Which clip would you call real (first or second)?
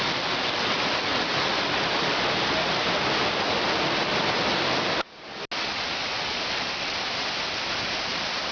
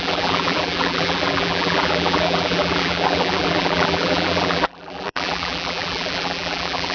first